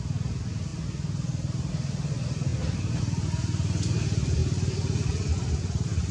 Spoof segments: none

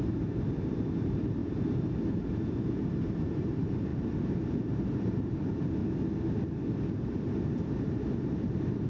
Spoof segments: 0.0-5.8 (vocoder, BigVGAN v2); 7.4-8.9